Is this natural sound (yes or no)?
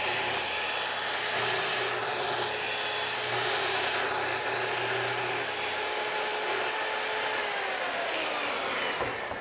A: yes